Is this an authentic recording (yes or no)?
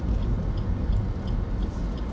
yes